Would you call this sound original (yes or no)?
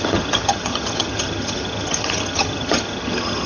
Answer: no